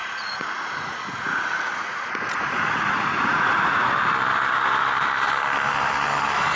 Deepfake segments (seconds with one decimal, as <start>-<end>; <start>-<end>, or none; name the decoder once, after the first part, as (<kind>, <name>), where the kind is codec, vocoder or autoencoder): 0.0-3.9 (vocoder, Vocos)